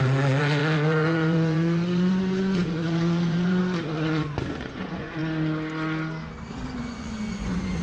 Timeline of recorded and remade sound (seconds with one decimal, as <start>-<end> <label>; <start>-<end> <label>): 0.0-3.6 remade; 3.6-4.5 recorded; 4.5-5.2 remade; 5.2-6.8 recorded; 6.8-7.8 remade